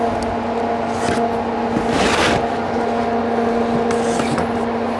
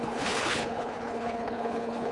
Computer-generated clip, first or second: second